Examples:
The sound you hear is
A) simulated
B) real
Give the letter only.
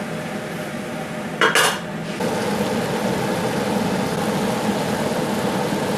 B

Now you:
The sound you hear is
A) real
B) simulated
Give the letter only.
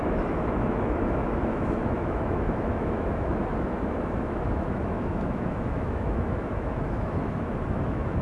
B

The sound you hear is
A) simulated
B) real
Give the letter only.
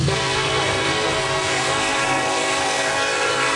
A